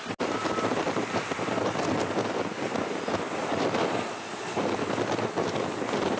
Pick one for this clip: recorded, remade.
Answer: recorded